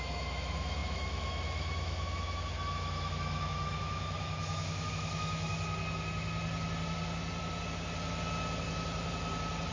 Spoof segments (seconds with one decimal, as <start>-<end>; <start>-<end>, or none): 0.0-5.5